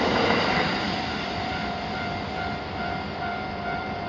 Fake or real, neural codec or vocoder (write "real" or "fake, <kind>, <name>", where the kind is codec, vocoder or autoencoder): real